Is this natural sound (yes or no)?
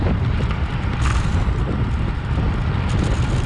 yes